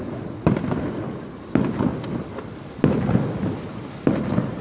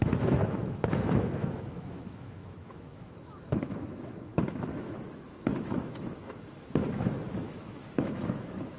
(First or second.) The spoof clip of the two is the second